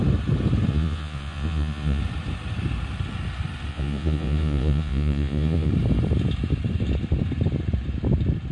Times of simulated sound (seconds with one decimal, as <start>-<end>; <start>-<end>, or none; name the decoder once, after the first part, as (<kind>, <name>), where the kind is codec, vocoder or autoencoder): 0.7-2.0 (vocoder, Vocos); 3.7-5.7